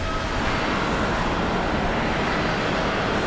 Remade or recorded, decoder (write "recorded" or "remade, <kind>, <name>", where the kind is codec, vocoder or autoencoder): recorded